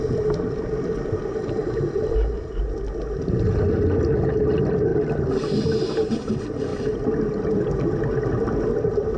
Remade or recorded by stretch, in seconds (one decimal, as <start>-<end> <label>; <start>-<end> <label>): 0.0-9.2 recorded